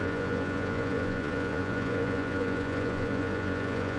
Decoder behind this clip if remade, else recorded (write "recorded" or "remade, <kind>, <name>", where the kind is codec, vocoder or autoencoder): remade, vocoder, Vocos